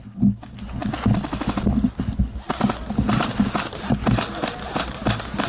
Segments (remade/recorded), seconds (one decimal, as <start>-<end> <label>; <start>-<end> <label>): 0.0-5.5 recorded